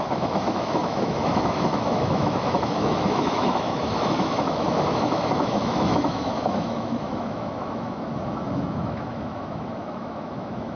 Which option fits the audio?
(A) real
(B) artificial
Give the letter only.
B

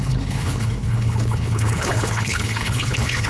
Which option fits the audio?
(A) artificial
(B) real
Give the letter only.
A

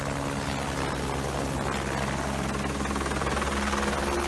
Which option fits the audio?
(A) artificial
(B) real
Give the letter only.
B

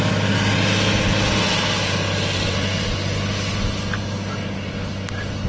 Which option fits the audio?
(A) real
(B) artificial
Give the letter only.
A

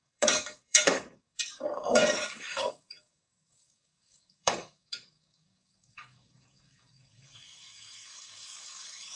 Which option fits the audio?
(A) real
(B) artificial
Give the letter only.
B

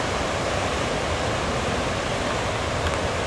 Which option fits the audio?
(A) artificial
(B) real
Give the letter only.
B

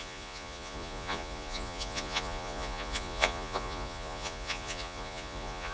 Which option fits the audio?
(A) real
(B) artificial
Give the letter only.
B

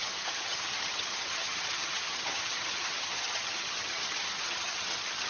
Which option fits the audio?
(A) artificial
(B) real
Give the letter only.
A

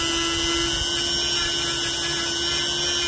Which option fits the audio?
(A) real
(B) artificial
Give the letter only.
A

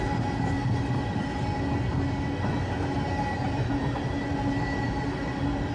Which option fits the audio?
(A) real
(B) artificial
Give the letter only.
A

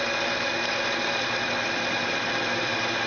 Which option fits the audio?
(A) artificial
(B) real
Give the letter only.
B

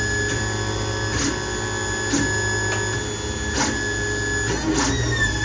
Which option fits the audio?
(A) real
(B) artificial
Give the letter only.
A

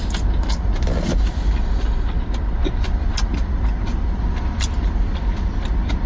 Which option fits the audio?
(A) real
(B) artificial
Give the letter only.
A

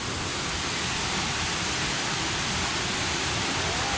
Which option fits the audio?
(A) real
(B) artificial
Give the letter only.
A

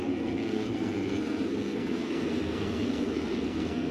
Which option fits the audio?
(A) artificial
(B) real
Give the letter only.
A